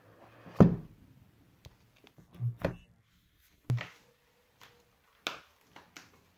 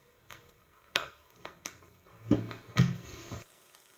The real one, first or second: first